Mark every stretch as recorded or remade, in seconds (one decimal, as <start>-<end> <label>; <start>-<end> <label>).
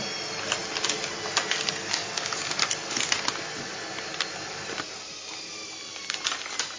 0.0-6.8 recorded